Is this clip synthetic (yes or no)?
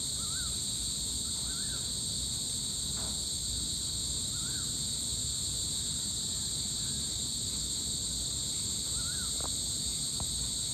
no